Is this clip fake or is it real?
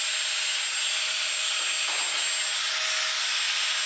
real